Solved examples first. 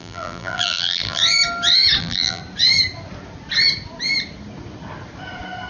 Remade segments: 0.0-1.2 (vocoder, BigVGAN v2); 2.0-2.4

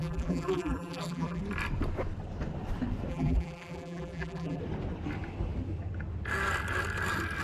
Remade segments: 0.0-1.4 (vocoder, BigVGAN v2); 3.1-4.6